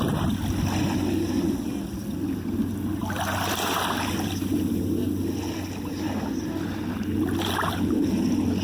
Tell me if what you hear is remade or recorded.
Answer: recorded